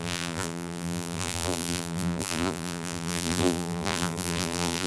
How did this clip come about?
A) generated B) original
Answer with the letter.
A